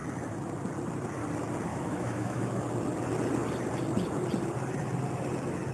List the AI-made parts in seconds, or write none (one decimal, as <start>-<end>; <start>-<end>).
1.7-2.6